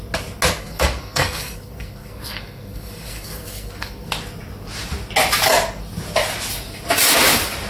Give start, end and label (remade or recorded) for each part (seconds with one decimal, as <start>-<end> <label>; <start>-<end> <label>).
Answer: 0.0-0.6 recorded; 0.6-4.1 remade; 4.1-7.7 recorded